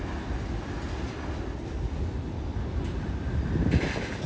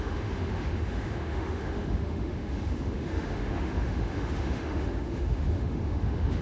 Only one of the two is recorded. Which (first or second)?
first